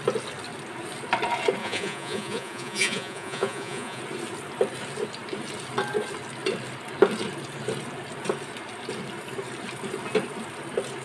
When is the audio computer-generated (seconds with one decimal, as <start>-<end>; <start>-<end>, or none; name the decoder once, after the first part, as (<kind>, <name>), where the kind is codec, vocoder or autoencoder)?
1.6-4.0 (vocoder, Vocos)